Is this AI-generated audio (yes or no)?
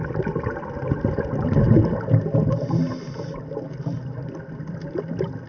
no